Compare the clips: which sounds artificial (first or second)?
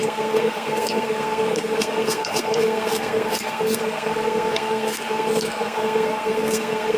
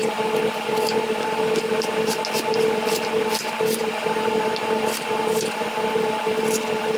first